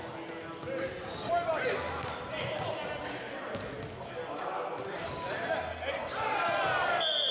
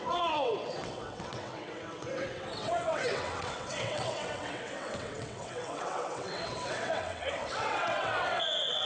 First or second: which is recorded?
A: first